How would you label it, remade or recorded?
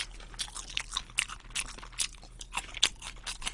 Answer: recorded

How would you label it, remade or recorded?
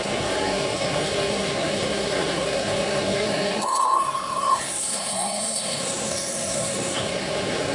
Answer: remade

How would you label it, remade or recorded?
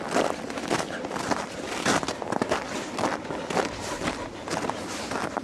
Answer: recorded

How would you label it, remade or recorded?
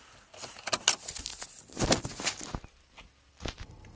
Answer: recorded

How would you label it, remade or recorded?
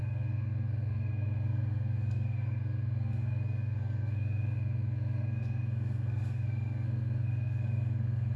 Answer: remade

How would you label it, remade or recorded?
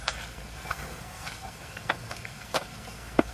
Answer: remade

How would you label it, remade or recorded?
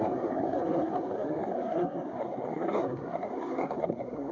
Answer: remade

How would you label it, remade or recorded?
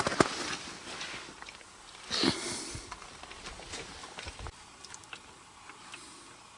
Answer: recorded